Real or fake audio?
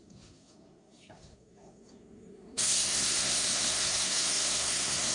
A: fake